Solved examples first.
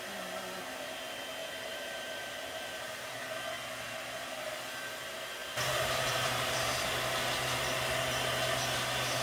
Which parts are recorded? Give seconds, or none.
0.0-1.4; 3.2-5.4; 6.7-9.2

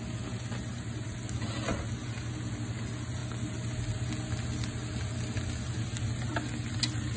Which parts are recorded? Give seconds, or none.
0.0-7.2

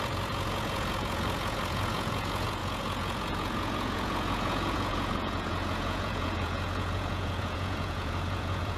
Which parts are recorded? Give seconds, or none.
none

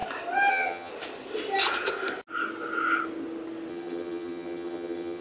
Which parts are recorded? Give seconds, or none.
0.0-0.5; 0.9-3.7

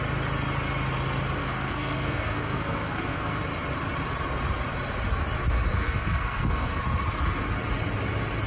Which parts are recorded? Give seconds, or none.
0.0-1.4; 3.4-5.8; 6.8-8.5